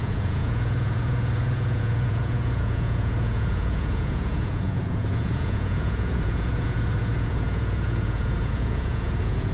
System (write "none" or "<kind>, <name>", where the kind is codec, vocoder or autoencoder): vocoder, Vocos